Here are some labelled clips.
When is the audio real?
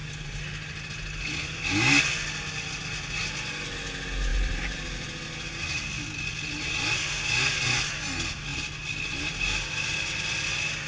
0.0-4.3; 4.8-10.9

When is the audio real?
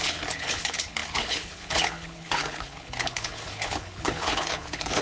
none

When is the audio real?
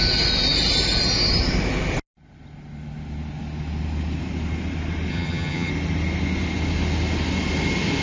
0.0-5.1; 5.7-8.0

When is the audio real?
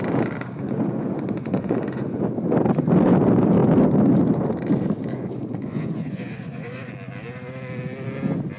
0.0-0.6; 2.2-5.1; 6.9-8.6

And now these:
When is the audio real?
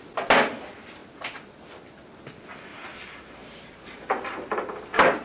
0.0-2.7; 4.5-5.2